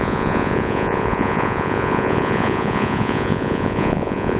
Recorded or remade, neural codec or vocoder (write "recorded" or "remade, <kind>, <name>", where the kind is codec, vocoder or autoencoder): remade, vocoder, Vocos